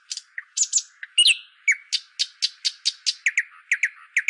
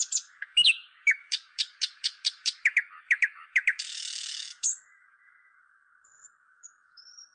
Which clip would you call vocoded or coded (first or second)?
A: second